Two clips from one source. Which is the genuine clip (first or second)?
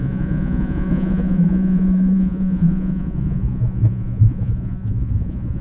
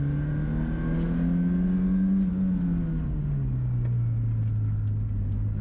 second